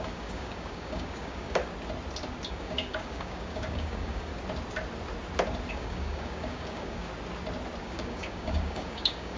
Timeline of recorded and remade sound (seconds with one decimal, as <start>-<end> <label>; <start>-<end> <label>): 0.0-1.6 remade; 1.6-2.5 recorded; 2.5-4.3 remade; 4.3-5.7 recorded; 5.7-7.1 remade; 7.1-7.8 recorded; 7.8-9.4 remade